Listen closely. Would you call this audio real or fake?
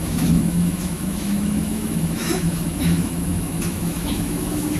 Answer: fake